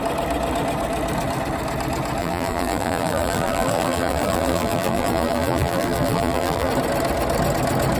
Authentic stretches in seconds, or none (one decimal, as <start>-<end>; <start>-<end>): 0.0-2.2; 6.7-8.0